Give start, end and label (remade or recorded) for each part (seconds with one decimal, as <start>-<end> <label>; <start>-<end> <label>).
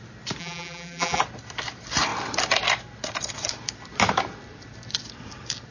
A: 0.0-0.4 recorded; 0.4-1.2 remade; 1.2-5.7 recorded